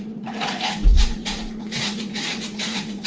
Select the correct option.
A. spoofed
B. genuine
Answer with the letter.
A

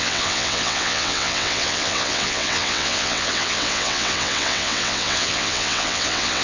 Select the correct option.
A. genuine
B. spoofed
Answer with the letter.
B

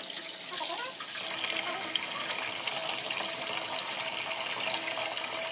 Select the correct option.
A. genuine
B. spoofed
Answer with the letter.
A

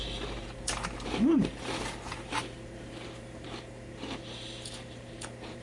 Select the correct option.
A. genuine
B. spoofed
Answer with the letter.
B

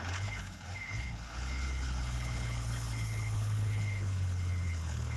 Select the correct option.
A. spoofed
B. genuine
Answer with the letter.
A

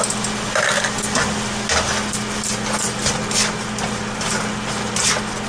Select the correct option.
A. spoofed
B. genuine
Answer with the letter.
B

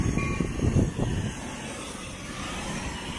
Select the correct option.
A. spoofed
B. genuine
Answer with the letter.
B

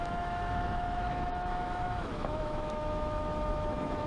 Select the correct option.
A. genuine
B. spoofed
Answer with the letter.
B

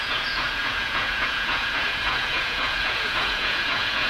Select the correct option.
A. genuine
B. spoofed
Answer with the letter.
B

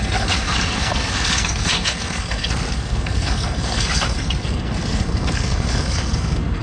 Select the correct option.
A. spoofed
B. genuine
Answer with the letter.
A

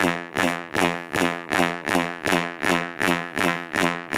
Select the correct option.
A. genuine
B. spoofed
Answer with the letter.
B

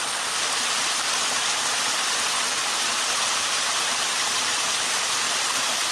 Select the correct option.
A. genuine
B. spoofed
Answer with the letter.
A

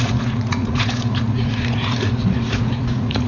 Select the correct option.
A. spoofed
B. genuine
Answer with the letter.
A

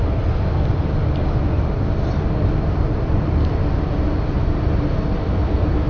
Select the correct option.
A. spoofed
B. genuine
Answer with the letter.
B